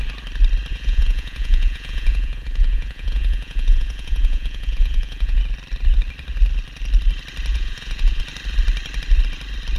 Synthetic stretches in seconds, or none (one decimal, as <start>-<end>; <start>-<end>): 0.7-5.4; 7.5-8.2

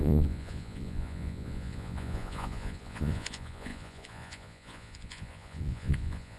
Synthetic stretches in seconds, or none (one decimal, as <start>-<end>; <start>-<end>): 0.0-6.4

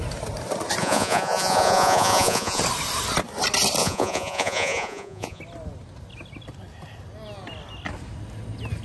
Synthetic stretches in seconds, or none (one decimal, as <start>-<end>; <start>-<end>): 0.8-2.6; 3.8-5.4

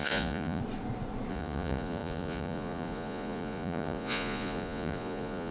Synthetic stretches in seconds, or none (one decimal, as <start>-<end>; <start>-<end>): 0.0-0.6; 1.3-5.5

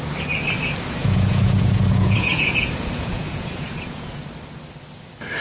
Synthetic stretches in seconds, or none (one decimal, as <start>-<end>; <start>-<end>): 1.0-4.2

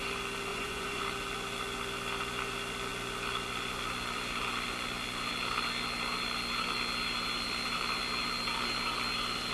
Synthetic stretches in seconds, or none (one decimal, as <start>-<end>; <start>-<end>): 0.5-1.0

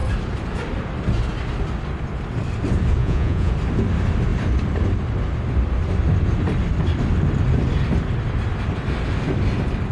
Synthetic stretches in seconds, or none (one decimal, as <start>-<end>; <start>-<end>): 3.0-3.5

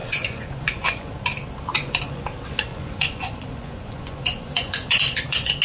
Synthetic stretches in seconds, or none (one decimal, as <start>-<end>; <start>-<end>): 0.0-1.2; 1.7-2.2; 2.7-5.6